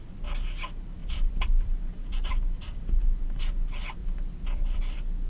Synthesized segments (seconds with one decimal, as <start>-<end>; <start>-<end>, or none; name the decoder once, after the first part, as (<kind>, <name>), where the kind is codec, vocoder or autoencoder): 1.0-3.0 (vocoder, BigVGAN v2); 4.0-5.3